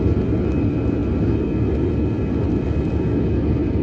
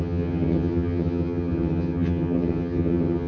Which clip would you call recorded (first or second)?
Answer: first